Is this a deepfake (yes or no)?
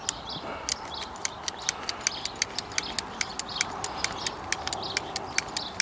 no